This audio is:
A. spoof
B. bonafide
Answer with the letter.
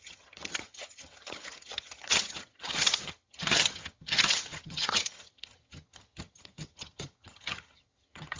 A